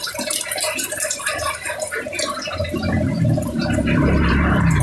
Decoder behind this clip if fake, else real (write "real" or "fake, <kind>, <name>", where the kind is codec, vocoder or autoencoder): fake, vocoder, BigVGAN v2